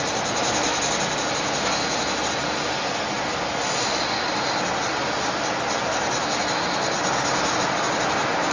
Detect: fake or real real